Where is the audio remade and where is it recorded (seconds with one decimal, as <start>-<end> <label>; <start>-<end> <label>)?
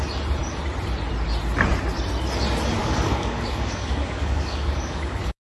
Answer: 0.0-2.8 recorded; 2.8-5.6 remade